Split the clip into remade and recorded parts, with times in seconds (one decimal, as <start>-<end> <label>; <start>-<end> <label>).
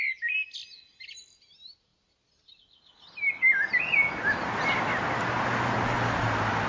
0.0-6.7 recorded